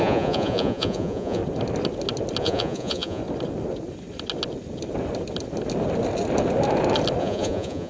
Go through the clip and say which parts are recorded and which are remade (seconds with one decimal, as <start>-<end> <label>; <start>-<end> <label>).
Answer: 0.0-1.4 remade; 1.4-2.4 recorded; 2.4-3.2 remade; 3.2-7.2 recorded; 7.2-7.9 remade